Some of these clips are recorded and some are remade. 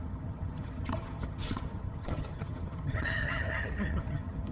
remade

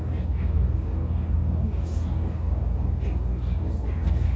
remade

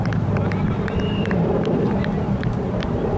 remade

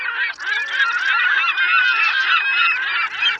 recorded